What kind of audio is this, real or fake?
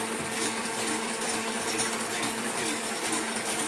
fake